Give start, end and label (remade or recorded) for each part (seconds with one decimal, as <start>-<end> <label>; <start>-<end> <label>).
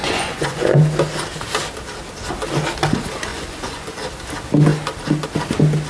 0.0-0.8 remade; 0.8-3.3 recorded; 3.3-4.0 remade; 4.0-5.9 recorded